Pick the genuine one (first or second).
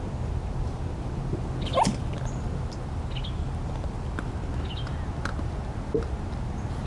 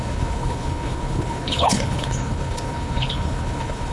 first